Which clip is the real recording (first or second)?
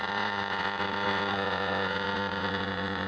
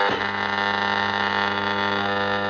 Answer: second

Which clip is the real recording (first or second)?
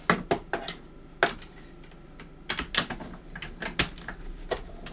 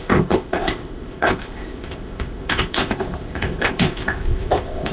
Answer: first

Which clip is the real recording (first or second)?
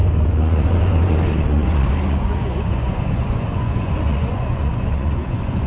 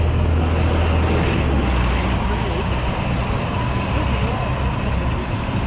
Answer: second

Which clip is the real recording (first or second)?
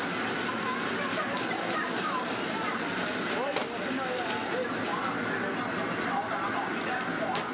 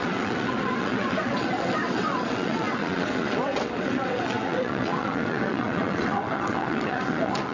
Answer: first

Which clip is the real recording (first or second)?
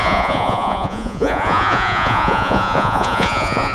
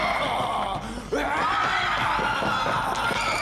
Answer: second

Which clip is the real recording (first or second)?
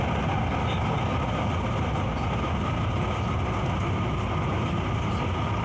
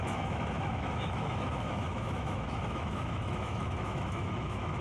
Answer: first